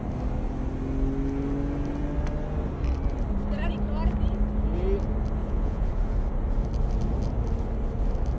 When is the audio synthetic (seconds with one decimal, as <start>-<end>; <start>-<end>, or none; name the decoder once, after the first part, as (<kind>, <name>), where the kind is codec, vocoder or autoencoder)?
5.4-5.9 (vocoder, Vocos)